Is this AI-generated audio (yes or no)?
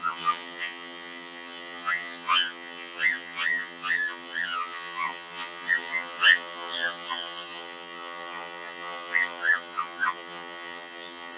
yes